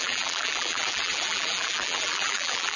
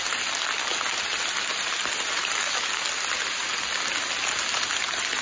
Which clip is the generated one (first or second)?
first